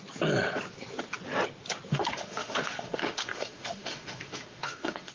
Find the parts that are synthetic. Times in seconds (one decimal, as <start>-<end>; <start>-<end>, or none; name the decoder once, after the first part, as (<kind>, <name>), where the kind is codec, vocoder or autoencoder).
1.9-5.1 (autoencoder, DAC-VAE)